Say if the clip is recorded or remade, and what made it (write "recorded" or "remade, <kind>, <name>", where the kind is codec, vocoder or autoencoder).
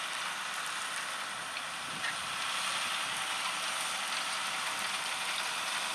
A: recorded